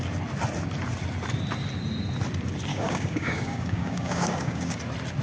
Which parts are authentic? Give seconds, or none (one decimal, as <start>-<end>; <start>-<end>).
0.0-2.7; 4.8-5.2